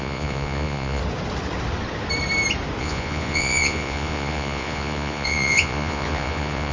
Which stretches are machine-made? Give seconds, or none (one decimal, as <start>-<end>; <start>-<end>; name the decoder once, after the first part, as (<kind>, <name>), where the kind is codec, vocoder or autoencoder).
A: 0.0-1.0 (vocoder, Vocos); 2.8-6.7